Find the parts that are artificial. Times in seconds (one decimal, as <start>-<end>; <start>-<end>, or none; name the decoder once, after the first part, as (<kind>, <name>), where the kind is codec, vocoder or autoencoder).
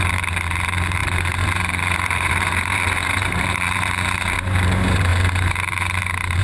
0.0-6.4 (vocoder, BigVGAN v2)